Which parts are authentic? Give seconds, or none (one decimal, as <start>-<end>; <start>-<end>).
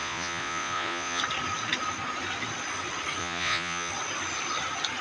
1.2-3.2; 3.9-5.0